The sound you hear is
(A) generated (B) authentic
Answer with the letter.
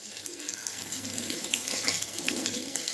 A